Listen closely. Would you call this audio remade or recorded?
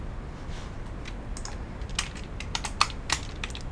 recorded